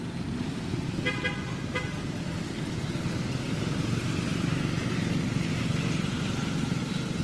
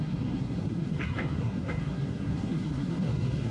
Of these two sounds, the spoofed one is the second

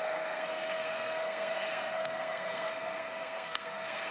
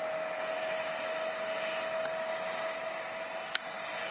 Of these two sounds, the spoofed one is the first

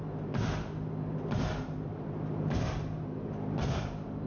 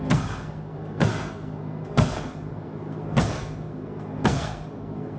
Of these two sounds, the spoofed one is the second